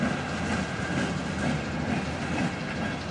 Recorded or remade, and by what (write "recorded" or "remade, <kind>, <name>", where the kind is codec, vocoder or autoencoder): recorded